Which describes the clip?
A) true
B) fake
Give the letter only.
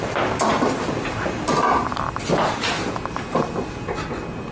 A